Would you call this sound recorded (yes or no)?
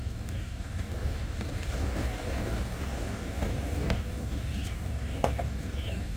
no